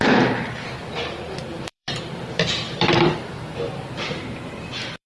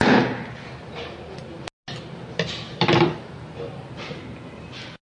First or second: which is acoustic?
second